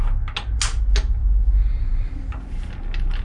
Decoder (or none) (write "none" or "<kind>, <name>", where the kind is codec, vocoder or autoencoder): none